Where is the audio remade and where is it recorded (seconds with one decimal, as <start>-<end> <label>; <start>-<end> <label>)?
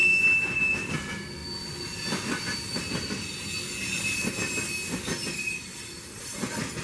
0.0-6.8 recorded